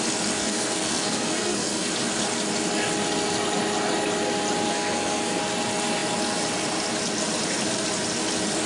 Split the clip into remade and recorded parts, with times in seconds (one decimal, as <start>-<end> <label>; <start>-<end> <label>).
0.0-0.4 recorded; 0.4-1.9 remade; 1.9-4.7 recorded; 4.7-5.4 remade; 5.4-8.7 recorded